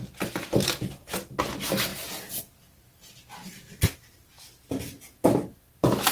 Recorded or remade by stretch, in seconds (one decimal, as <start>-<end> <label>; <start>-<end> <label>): 0.0-6.1 recorded